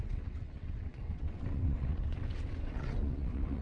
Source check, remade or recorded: remade